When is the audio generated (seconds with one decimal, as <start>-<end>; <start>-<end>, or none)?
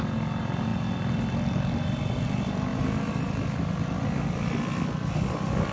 none